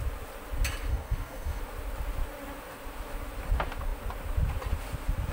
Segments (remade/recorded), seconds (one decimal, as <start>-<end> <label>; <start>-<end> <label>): 0.0-0.9 recorded; 0.9-1.6 remade; 1.6-5.3 recorded